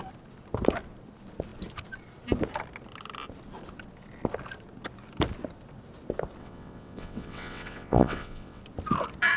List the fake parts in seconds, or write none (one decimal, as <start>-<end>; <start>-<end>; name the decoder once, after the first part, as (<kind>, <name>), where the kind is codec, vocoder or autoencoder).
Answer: 6.4-8.6 (vocoder, WaveNeXt)